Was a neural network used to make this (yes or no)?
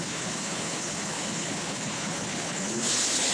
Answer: yes